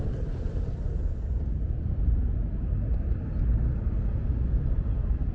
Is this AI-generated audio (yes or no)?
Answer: no